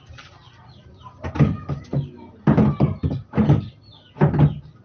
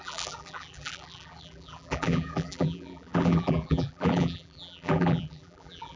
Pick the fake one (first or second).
second